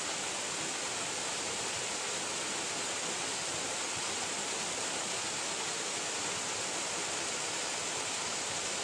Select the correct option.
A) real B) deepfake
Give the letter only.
A